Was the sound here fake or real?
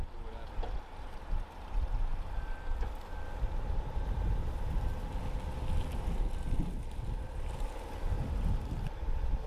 real